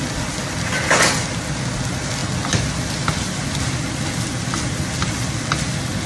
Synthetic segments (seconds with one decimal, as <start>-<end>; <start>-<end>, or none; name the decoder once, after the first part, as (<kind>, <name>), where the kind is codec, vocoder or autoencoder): none